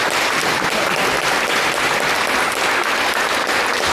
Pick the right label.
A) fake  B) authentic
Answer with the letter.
B